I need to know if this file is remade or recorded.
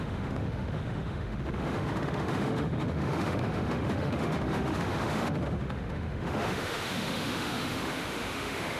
remade